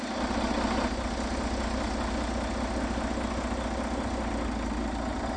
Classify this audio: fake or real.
real